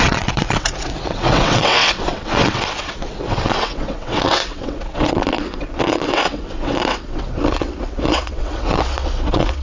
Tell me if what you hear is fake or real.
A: fake